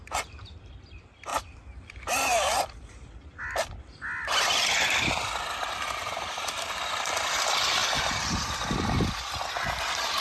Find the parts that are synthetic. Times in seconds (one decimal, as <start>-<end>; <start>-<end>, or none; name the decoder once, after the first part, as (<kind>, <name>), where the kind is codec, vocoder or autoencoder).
1.3-4.5 (vocoder, BigVGAN v2); 7.8-8.5